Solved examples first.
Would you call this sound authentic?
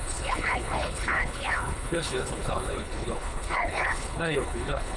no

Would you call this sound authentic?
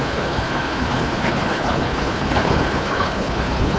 no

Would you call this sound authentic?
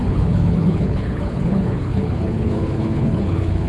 no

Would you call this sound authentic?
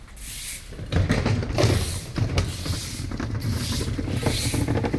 yes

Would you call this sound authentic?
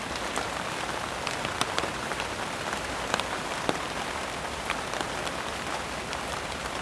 yes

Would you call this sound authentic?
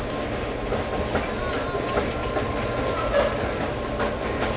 yes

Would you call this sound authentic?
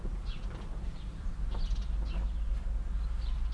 yes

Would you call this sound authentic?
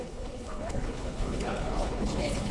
no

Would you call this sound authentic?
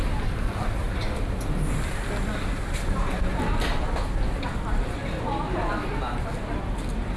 yes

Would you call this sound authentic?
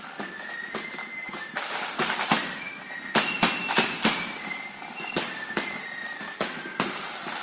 yes